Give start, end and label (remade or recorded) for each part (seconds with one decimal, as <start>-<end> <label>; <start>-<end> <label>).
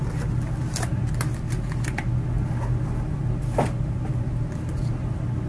0.0-5.5 recorded